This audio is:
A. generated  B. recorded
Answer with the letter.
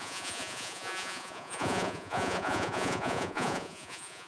A